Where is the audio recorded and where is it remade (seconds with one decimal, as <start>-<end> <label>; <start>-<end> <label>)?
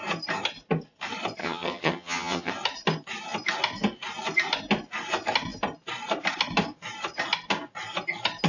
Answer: 0.0-1.4 recorded; 1.4-2.5 remade; 2.5-8.5 recorded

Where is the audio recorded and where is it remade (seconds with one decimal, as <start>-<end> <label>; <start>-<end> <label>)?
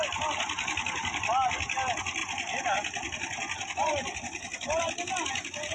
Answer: 0.0-5.7 recorded